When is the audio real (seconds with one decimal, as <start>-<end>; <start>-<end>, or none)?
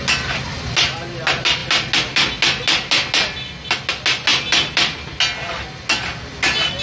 0.0-6.8